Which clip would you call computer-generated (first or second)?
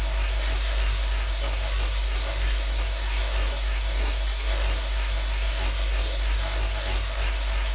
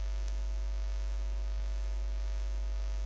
first